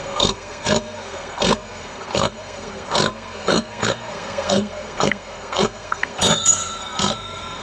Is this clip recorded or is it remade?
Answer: remade